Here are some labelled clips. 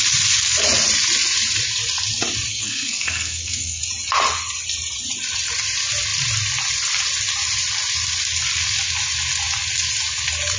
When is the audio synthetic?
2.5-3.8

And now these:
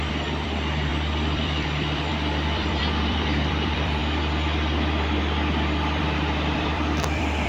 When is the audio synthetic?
0.0-4.0; 6.0-7.5

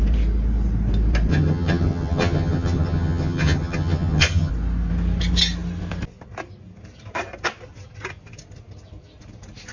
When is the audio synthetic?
1.3-4.5

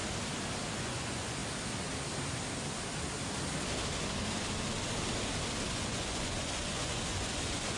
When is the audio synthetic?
0.7-1.4; 5.7-7.8

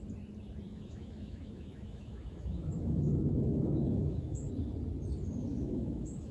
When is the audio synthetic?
0.7-4.5; 5.5-6.3

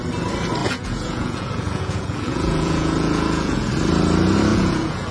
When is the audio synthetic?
0.6-3.7; 4.5-5.1

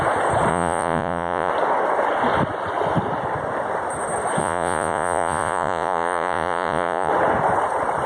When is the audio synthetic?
0.5-1.5; 4.4-7.1

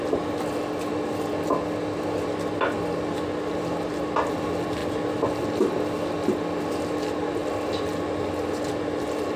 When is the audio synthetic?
none